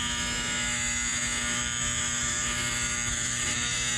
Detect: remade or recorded remade